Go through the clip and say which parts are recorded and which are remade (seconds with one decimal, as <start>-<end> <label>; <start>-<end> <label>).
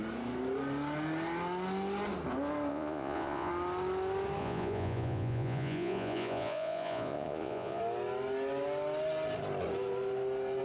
0.0-2.7 recorded; 2.7-3.5 remade; 3.5-4.4 recorded; 4.4-7.8 remade; 7.8-10.6 recorded